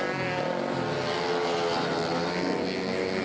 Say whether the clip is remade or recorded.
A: recorded